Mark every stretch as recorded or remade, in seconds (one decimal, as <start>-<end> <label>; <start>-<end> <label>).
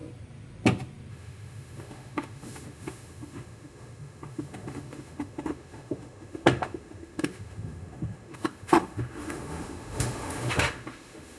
0.0-1.1 recorded; 1.1-11.4 remade